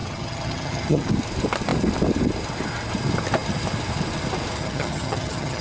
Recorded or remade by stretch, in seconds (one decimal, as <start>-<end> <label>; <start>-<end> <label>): 0.0-1.1 remade; 1.1-4.6 recorded; 4.6-5.6 remade